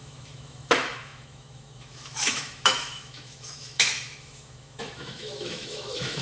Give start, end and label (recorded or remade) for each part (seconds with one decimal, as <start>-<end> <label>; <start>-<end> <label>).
0.0-6.2 remade